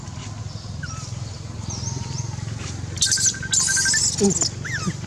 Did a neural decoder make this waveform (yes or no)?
no